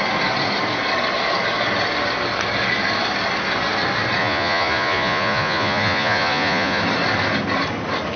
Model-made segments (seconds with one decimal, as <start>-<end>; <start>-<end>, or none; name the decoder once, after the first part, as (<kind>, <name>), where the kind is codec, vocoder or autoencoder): 4.2-6.8 (vocoder, Vocos)